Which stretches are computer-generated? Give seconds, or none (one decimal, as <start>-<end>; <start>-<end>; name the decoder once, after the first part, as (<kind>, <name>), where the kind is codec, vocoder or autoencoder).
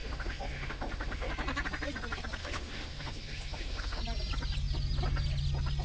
0.0-1.3 (autoencoder, DAC-VAE); 2.4-4.0